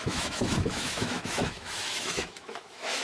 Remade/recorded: remade